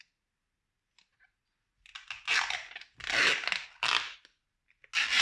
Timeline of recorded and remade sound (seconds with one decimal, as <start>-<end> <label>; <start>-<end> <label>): 0.0-5.2 recorded